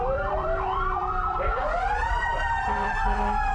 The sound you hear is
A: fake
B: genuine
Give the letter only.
A